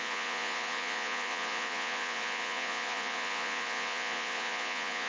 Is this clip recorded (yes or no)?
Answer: no